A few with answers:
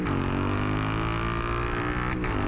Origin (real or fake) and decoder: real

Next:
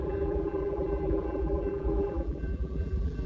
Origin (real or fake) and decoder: fake, vocoder, BigVGAN v2